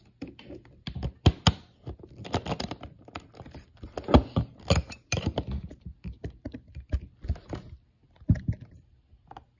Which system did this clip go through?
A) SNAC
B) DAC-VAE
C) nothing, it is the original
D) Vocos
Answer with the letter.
C